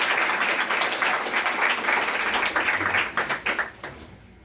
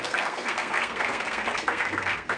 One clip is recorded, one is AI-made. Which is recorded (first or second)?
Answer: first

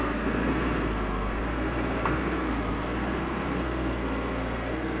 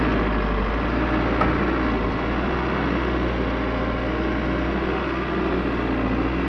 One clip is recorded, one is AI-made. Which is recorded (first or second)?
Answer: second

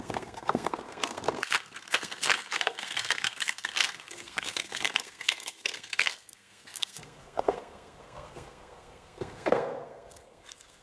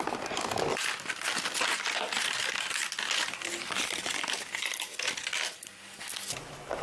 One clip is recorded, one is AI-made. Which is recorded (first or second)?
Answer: second